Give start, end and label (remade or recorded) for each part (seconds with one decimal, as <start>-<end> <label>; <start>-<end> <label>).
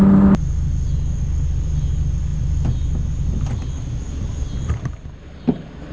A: 0.0-5.9 recorded